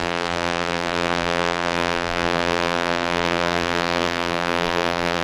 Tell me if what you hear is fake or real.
fake